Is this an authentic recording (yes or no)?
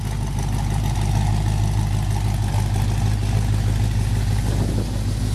yes